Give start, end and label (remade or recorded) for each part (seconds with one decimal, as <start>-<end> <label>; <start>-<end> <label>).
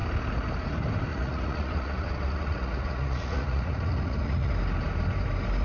0.0-1.1 recorded; 1.1-4.5 remade; 4.5-5.6 recorded